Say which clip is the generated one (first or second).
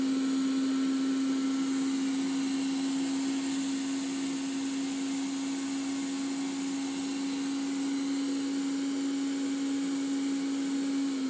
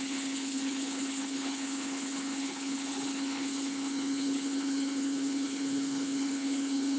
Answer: second